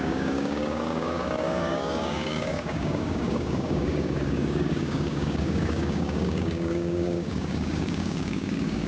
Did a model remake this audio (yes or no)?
yes